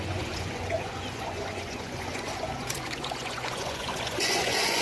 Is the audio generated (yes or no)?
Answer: yes